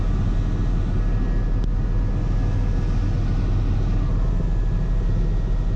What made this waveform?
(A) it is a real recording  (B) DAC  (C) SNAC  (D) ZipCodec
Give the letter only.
A